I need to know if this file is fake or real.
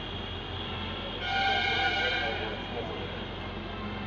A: real